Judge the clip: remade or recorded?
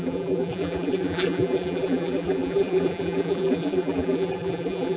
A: remade